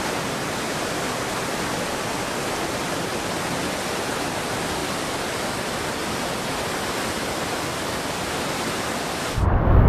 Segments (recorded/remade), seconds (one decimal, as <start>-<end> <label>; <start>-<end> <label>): 0.0-4.8 recorded; 4.8-5.3 remade; 5.3-9.9 recorded